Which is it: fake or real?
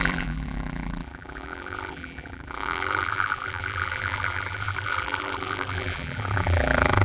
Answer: fake